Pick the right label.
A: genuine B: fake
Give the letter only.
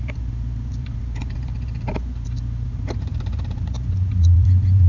B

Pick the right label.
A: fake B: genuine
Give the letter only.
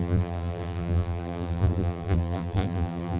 A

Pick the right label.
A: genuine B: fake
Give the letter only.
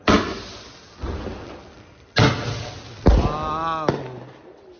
A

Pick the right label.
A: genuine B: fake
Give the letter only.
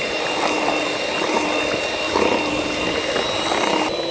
B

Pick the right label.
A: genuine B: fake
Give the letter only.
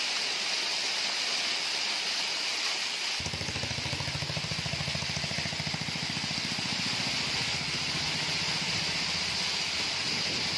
A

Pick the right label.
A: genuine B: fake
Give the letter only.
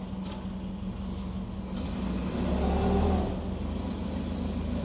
A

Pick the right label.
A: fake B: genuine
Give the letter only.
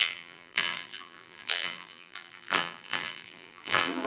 A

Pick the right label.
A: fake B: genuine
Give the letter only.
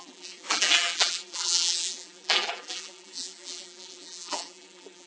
A